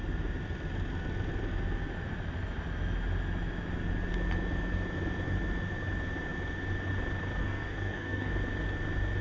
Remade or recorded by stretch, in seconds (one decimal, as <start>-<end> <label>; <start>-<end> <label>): 0.0-7.4 recorded; 7.4-8.3 remade; 8.3-9.2 recorded